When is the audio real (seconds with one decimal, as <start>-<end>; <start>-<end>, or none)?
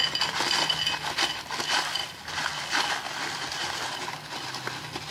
0.0-5.1